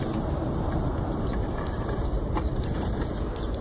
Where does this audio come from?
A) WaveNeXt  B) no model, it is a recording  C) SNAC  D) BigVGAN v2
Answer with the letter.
D